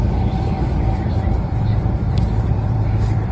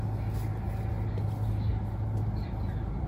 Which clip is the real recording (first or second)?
second